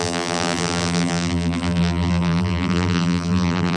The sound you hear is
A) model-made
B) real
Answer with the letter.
A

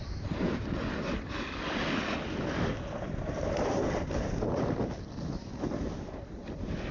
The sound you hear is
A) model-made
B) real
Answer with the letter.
B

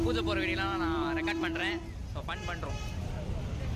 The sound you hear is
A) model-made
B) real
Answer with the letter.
A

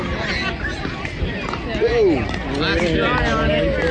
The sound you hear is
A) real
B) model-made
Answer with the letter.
A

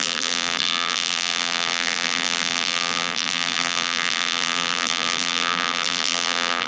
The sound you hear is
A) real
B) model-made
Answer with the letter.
B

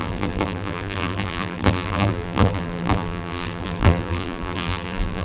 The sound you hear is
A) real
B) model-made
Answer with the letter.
B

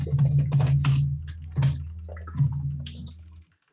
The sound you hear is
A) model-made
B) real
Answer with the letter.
B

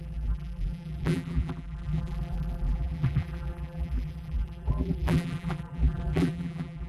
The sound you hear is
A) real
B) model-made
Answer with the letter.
B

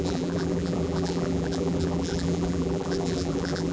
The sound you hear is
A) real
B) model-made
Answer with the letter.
B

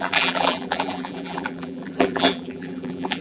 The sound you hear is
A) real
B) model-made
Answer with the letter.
B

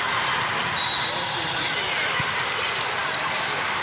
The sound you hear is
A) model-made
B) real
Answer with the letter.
A